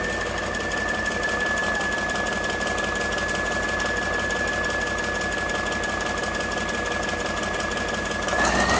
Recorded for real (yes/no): yes